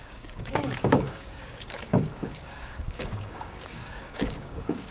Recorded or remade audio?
remade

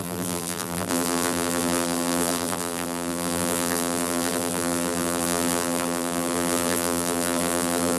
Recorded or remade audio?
remade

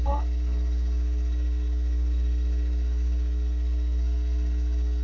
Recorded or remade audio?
remade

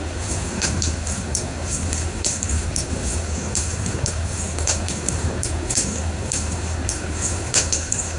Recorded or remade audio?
remade